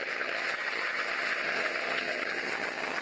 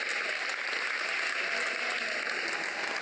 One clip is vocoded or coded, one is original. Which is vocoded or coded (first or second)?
first